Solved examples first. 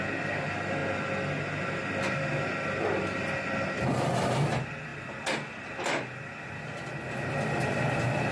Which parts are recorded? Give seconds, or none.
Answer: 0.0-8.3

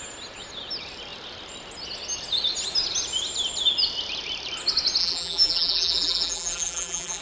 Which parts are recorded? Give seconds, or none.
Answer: 0.0-5.0

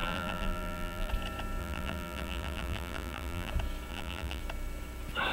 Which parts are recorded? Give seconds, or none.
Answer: 1.1-1.6; 3.5-3.9; 4.4-5.3